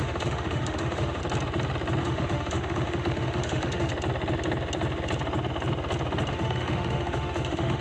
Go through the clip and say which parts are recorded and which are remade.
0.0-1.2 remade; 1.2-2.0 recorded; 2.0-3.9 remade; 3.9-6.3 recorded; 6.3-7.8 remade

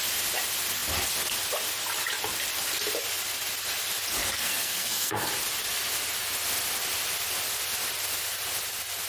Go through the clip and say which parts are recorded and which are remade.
0.0-4.2 recorded; 4.2-5.3 remade; 5.3-9.1 recorded

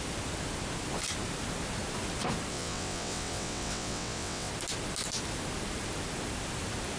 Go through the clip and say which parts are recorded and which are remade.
0.0-2.5 recorded; 2.5-4.5 remade; 4.5-7.0 recorded